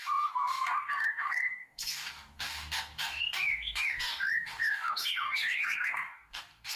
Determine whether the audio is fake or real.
fake